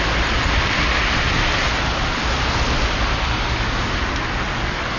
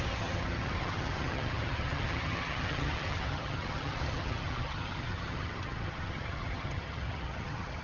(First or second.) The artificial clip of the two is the second